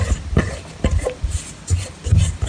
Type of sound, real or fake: real